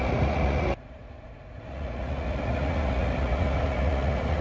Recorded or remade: remade